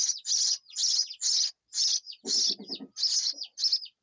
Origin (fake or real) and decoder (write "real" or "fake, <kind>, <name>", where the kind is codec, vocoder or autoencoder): real